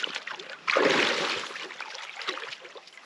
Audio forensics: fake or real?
fake